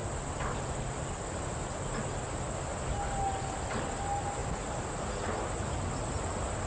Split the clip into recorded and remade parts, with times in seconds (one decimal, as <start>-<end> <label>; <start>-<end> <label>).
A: 0.0-6.7 recorded